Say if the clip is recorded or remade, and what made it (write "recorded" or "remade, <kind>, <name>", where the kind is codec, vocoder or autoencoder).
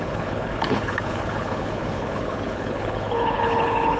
remade, codec, HILCodec